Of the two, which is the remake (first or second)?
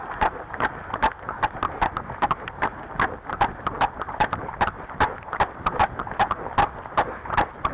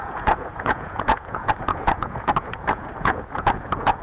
second